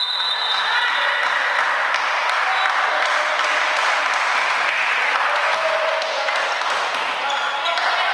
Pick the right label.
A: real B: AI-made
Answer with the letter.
A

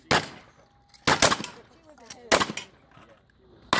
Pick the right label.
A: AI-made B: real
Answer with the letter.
B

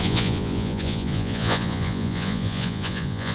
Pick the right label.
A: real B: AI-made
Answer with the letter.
B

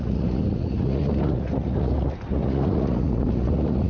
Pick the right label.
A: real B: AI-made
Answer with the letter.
B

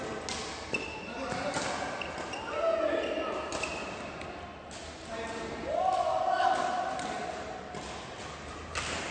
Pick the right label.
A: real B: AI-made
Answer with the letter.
A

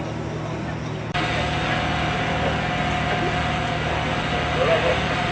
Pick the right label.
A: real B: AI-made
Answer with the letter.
A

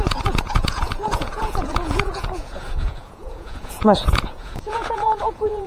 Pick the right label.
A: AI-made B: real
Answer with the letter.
A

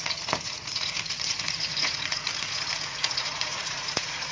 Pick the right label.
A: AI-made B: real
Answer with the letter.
A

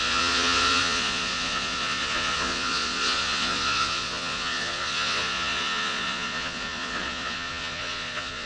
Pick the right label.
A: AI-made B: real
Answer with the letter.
A